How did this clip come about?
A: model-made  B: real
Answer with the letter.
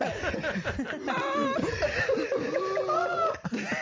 B